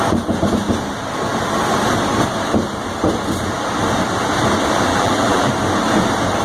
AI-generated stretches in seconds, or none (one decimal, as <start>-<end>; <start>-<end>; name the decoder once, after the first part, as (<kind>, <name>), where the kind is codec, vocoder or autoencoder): 4.9-5.5 (vocoder, BigVGAN v2)